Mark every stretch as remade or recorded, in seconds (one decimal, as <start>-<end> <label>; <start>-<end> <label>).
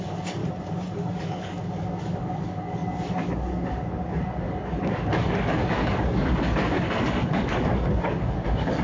0.0-0.4 remade; 0.4-1.2 recorded; 1.2-8.8 remade